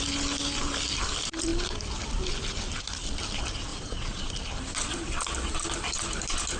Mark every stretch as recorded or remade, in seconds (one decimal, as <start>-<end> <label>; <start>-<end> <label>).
0.0-3.7 recorded; 3.7-4.3 remade; 4.3-6.6 recorded

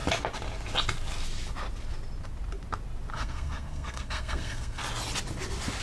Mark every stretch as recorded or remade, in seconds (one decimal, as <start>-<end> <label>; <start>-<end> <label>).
0.0-3.1 recorded; 3.1-4.8 remade; 4.8-5.8 recorded

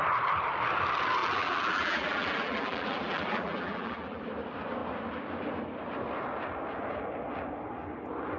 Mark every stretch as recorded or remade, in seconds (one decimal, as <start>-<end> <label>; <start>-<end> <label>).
0.0-1.2 recorded; 1.2-4.2 remade; 4.2-8.4 recorded

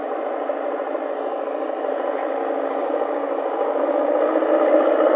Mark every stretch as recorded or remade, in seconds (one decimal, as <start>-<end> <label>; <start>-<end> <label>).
0.0-2.4 recorded; 2.4-3.8 remade; 3.8-5.2 recorded

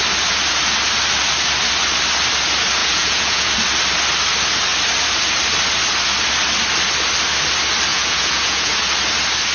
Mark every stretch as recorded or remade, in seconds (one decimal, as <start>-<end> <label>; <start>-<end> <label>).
0.0-2.8 recorded; 2.8-3.5 remade; 3.5-7.9 recorded; 7.9-8.7 remade; 8.7-9.5 recorded

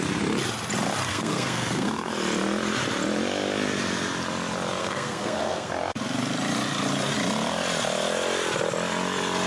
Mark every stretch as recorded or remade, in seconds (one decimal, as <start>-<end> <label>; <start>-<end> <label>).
0.0-1.1 recorded; 1.1-2.1 remade; 2.1-4.8 recorded; 4.8-5.7 remade; 5.7-9.5 recorded